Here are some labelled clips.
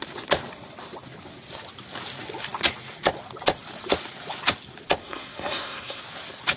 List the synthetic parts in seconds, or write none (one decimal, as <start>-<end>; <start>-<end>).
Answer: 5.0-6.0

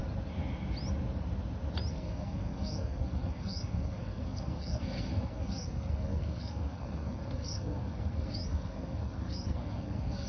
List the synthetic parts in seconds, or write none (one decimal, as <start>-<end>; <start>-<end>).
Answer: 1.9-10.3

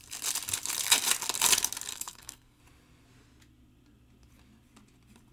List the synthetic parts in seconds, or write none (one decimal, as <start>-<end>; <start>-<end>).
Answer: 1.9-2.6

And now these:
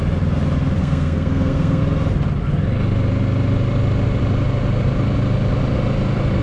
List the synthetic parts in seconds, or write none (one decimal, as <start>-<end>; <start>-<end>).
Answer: 0.8-1.8

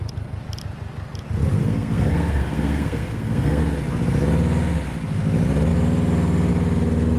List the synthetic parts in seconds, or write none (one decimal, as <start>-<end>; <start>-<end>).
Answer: 1.6-3.6

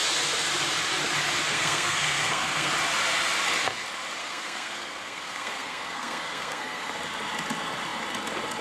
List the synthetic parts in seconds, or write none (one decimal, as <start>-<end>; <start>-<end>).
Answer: 1.5-2.7; 4.2-6.9